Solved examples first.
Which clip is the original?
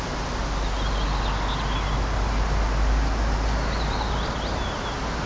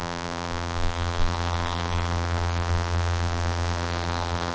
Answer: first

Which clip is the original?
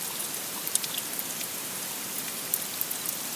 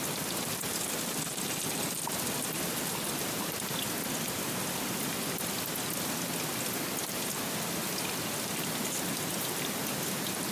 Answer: second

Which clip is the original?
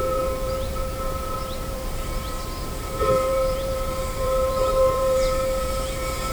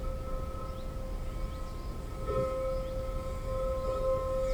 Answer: second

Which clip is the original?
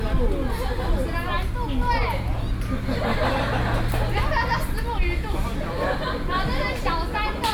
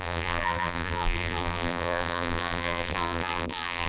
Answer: first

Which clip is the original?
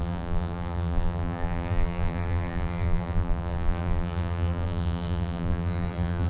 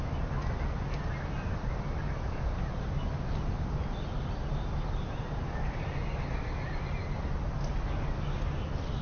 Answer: second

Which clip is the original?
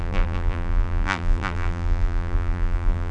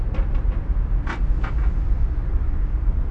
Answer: second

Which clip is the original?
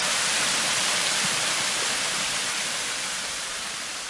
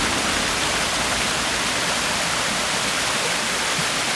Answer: second